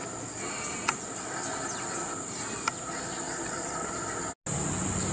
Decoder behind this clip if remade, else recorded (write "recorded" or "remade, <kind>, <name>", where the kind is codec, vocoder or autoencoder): recorded